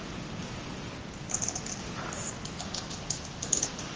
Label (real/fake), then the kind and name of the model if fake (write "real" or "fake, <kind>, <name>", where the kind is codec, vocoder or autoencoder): real